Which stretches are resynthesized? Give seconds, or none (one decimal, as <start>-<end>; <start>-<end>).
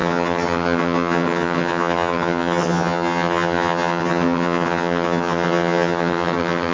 0.0-6.7